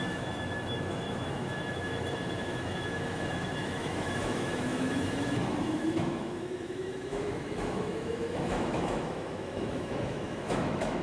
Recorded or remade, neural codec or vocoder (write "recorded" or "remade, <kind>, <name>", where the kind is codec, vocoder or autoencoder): remade, autoencoder, DAC-VAE